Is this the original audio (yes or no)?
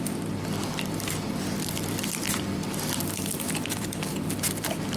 no